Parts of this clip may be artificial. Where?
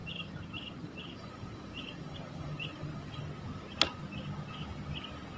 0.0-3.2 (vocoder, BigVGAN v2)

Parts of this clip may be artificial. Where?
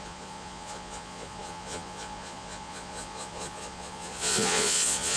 0.0-5.2 (vocoder, Vocos)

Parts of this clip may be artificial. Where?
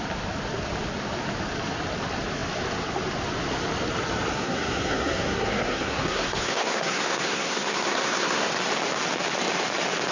4.3-8.5 (codec, SNAC)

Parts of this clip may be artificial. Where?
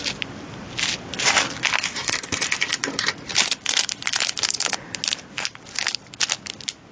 none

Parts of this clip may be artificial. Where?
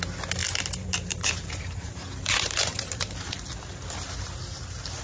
0.4-3.3 (vocoder, BigVGAN v2)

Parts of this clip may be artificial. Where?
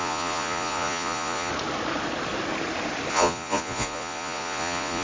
0.0-1.5 (vocoder, Vocos); 3.1-5.0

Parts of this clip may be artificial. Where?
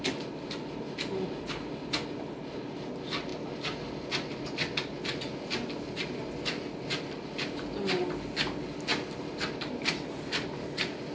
none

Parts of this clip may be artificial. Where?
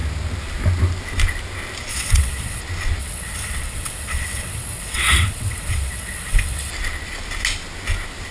1.9-2.6 (vocoder, WaveNeXt); 3.0-6.7